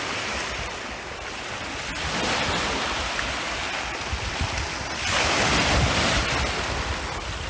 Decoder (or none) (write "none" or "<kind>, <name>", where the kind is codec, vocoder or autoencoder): none